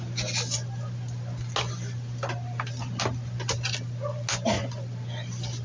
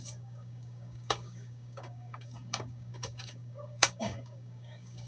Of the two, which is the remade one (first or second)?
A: second